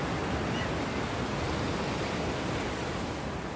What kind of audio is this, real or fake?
real